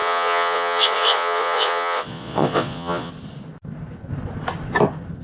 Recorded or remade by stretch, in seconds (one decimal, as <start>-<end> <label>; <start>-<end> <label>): 0.0-3.1 remade; 3.1-5.2 recorded